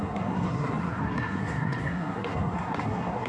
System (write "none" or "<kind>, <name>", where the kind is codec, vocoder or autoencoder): codec, SNAC